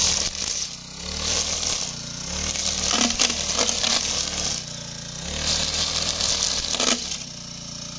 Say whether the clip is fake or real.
real